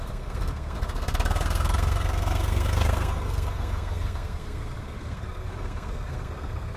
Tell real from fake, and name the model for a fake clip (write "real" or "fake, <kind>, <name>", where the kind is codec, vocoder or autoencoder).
fake, codec, SNAC